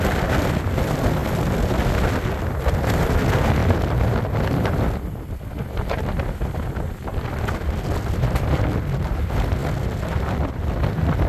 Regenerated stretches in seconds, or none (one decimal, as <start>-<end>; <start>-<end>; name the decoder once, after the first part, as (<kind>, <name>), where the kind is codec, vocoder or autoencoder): none